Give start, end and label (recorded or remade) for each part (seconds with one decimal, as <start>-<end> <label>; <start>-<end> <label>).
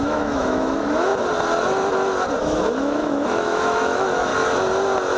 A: 0.0-1.1 remade; 1.1-2.4 recorded; 2.4-4.3 remade; 4.3-5.2 recorded